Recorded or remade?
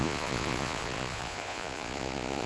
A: remade